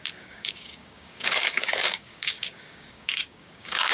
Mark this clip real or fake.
fake